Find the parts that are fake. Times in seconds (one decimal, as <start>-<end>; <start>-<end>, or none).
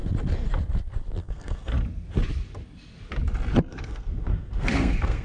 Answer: 1.2-1.7; 3.7-5.2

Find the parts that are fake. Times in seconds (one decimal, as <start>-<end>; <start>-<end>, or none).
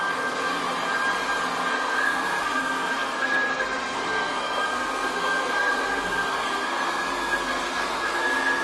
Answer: 0.0-0.6; 1.7-8.6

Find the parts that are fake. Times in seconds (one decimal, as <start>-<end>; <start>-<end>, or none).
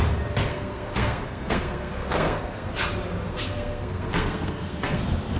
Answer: 0.5-2.7; 3.3-5.0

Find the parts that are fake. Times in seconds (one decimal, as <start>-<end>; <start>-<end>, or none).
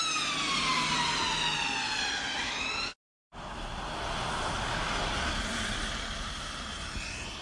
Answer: none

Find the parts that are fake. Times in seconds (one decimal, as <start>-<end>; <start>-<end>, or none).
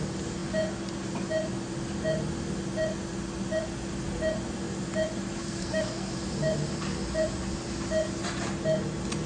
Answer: 5.4-6.1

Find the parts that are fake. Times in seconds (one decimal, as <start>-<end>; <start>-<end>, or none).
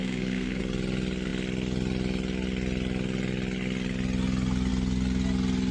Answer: 0.0-0.6